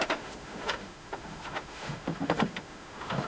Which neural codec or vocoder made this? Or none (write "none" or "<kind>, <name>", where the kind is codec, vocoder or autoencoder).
autoencoder, DAC-VAE